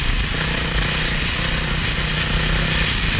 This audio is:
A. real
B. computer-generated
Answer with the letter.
A